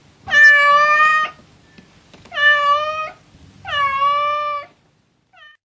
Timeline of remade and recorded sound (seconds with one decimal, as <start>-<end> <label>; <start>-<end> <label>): 0.0-5.7 recorded